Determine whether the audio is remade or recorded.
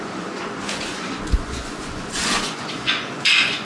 remade